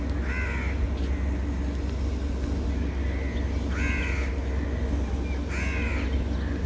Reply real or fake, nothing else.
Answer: real